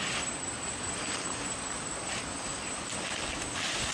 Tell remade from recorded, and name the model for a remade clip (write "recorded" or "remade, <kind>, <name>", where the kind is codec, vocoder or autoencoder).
recorded